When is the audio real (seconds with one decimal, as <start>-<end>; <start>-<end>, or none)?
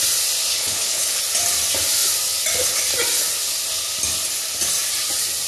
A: 0.0-0.5; 1.2-5.5